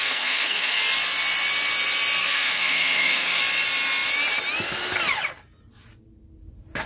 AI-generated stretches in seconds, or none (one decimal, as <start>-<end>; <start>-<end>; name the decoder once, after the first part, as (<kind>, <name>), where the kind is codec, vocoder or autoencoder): 0.0-0.8 (codec, SNAC); 2.2-3.4